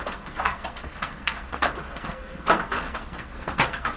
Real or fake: fake